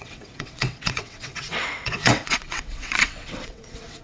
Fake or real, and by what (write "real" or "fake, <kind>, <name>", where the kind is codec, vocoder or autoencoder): fake, vocoder, WaveNeXt